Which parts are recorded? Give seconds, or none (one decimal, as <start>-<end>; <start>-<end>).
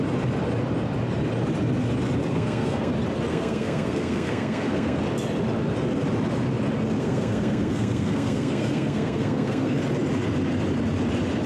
0.0-2.2; 2.9-3.3; 5.0-7.0; 9.8-11.5